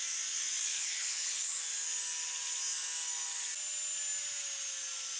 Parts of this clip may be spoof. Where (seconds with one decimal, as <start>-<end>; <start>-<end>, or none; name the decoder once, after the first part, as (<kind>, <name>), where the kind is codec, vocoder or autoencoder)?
0.7-1.6 (codec, HILCodec)